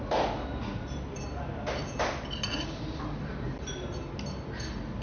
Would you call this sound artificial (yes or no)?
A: no